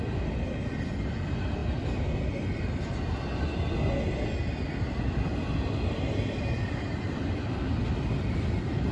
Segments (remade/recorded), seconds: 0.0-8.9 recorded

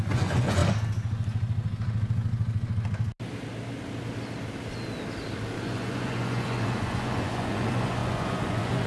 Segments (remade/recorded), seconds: 0.0-0.6 remade; 0.6-5.6 recorded; 5.6-8.9 remade

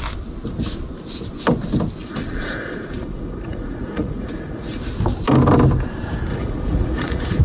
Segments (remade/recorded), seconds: 0.0-2.0 recorded; 2.0-4.8 remade; 4.8-6.3 recorded; 6.3-7.4 remade